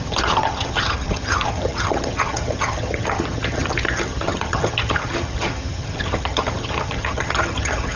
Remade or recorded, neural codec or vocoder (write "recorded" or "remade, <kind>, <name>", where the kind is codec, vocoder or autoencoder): remade, vocoder, HiFi-GAN